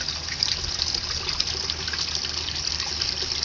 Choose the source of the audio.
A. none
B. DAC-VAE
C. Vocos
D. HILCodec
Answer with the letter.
A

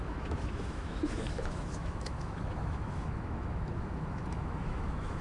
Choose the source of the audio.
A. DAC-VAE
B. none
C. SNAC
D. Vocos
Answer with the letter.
A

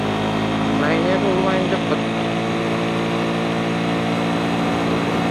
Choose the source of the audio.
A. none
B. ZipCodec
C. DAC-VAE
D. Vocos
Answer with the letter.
A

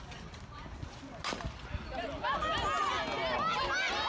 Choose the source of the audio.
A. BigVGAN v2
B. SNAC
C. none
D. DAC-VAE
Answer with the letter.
C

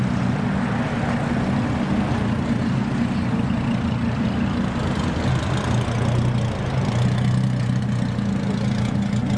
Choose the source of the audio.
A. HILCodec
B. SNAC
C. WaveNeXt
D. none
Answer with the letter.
D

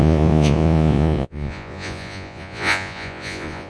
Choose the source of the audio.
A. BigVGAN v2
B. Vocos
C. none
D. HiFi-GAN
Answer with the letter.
B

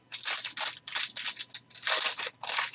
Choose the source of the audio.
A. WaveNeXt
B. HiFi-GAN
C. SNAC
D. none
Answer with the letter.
D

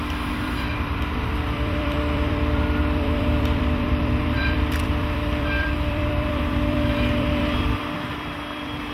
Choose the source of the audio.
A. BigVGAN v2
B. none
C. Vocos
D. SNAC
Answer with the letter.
A